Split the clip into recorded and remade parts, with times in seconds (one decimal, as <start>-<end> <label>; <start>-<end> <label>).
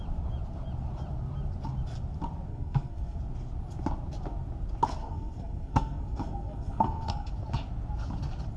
0.0-2.5 recorded; 2.5-3.2 remade; 3.2-5.0 recorded; 5.0-7.3 remade; 7.3-8.6 recorded